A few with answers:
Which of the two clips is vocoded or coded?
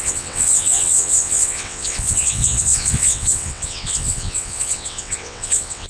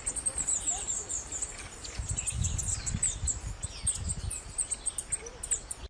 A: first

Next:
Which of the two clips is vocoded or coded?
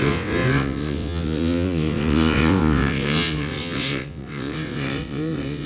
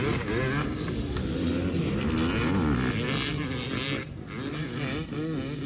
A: first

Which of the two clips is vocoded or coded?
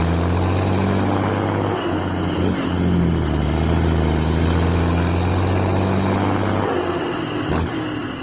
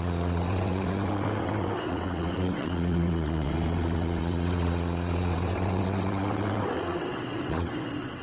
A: second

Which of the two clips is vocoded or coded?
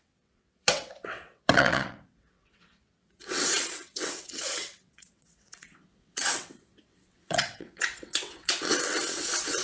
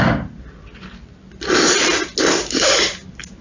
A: first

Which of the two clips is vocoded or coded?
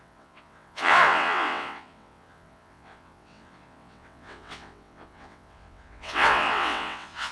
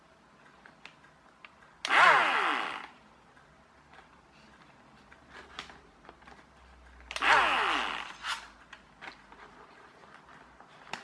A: first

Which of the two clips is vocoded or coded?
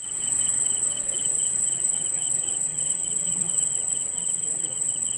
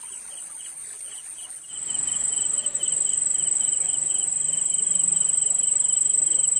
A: first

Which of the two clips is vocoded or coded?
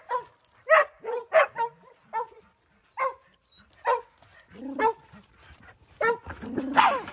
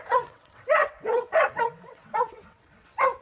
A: second